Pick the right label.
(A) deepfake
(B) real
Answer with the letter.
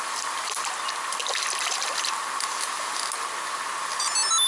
B